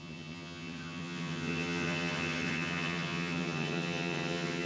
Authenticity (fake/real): fake